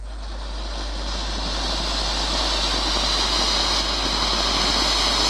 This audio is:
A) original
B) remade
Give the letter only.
A